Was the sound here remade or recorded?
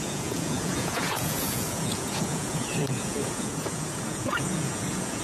remade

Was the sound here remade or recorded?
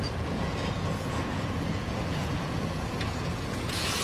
remade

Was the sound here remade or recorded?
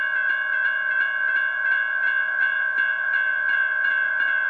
remade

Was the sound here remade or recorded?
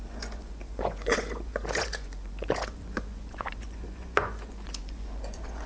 remade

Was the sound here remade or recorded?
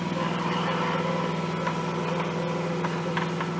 recorded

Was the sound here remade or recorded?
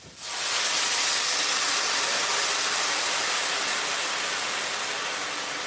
recorded